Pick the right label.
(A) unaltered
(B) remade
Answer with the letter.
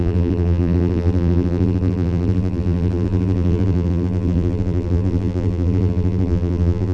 B